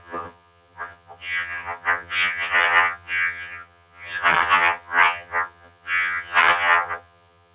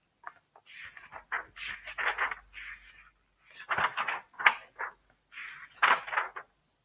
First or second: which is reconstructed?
first